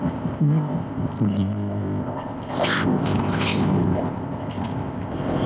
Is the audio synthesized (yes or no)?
yes